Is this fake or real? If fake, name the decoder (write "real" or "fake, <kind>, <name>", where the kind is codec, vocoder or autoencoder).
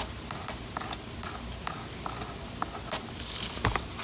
real